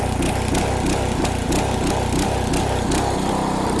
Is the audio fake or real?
real